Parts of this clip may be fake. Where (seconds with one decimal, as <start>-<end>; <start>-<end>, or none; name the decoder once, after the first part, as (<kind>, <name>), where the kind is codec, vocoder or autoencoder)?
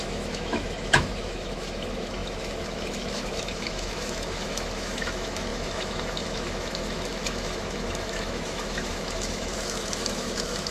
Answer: 0.0-10.7 (autoencoder, DAC-VAE)